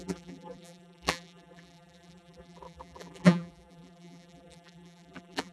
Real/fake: fake